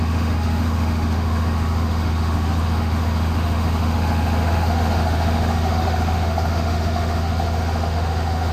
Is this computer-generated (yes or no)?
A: yes